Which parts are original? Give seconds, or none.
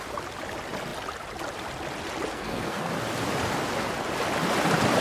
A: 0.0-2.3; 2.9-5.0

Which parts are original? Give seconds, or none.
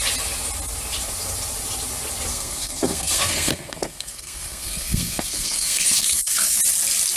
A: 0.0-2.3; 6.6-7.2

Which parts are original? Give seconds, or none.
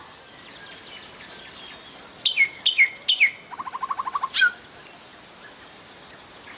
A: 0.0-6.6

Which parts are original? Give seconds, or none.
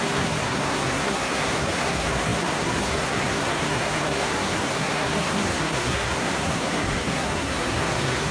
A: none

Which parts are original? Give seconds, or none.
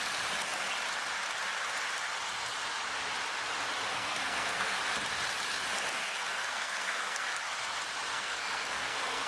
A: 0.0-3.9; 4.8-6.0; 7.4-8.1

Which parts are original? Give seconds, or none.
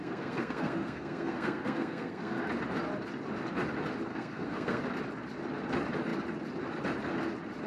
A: 2.5-4.1; 4.8-7.7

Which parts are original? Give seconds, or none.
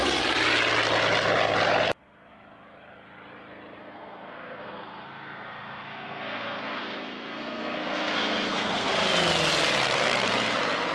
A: 0.0-3.8; 8.9-10.9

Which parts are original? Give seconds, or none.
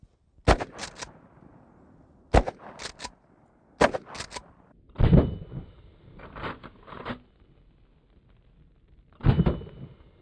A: 0.0-10.2